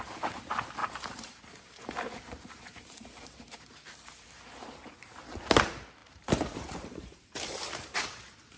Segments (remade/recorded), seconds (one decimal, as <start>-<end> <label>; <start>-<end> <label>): 0.0-0.8 recorded; 0.8-4.4 remade; 4.4-6.0 recorded; 6.0-8.6 remade